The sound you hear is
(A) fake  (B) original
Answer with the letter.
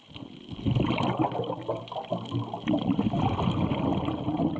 B